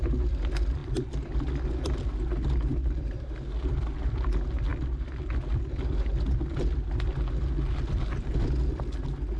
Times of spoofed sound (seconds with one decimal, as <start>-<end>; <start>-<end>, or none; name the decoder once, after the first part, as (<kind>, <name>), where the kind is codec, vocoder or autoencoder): none